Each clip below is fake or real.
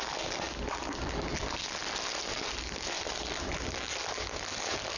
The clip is real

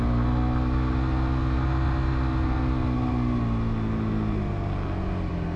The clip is real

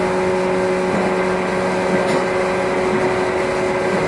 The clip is real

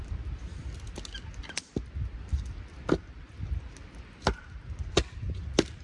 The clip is real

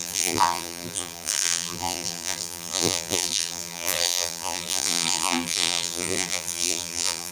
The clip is fake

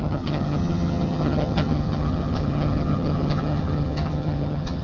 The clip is fake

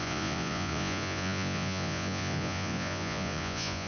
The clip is fake